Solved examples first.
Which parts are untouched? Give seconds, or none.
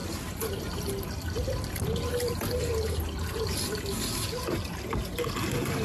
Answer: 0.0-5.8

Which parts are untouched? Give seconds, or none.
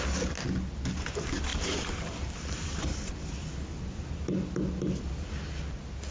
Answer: 0.0-1.5; 3.1-6.1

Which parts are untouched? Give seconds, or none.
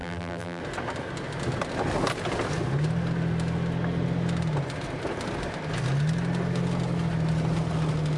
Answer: 0.6-8.2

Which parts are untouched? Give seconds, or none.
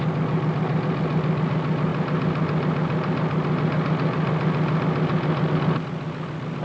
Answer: 0.0-6.6